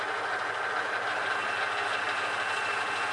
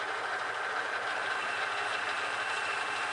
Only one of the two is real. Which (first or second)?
first